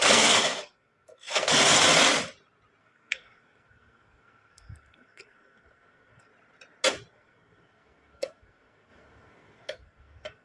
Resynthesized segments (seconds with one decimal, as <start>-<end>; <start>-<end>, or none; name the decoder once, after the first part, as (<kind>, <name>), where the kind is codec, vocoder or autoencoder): 0.0-1.5 (codec, SNAC); 2.8-6.3; 7.1-10.4